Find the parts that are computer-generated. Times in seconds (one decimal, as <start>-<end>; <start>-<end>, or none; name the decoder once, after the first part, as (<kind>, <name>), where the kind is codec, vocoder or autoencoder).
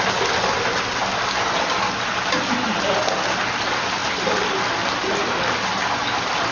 none